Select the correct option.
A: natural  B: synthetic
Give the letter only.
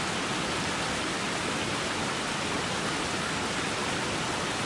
A